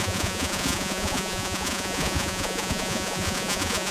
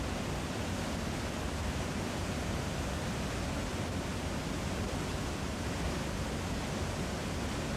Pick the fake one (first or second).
first